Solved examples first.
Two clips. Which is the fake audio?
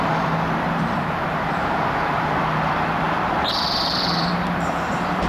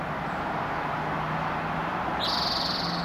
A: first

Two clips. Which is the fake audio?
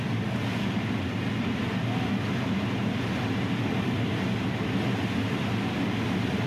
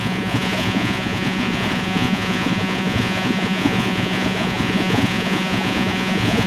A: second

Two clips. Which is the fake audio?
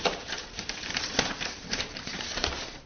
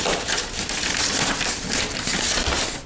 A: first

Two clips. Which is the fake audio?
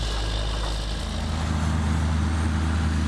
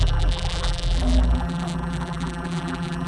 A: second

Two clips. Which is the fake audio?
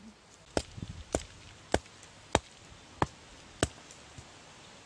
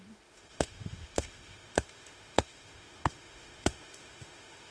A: second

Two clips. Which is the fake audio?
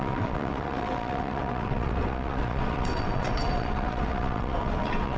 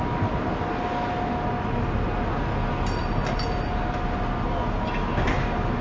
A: first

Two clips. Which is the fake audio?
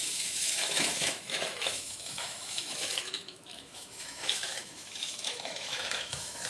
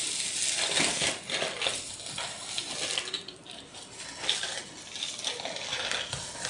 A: first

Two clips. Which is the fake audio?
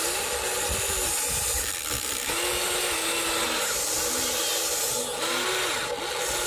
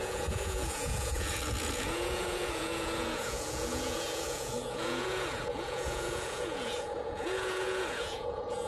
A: second